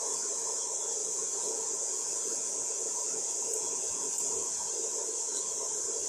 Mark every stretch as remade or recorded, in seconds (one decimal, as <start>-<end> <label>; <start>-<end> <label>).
0.0-1.0 recorded; 1.0-4.7 remade; 4.7-6.1 recorded

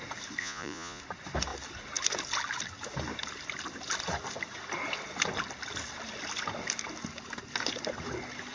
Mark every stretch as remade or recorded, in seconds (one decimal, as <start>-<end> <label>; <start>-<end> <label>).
0.0-0.4 recorded; 0.4-1.0 remade; 1.0-8.5 recorded

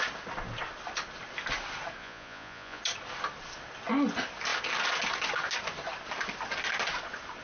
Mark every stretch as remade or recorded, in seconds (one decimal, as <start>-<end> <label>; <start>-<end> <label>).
0.0-2.0 recorded; 2.0-2.8 remade; 2.8-7.4 recorded

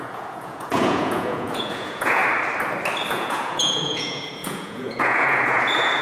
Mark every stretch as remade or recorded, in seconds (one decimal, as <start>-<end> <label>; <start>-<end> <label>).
0.0-2.2 remade; 2.2-3.1 recorded; 3.1-6.0 remade